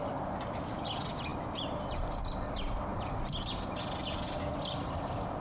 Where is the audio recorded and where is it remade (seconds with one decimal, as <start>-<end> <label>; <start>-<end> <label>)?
0.0-5.4 recorded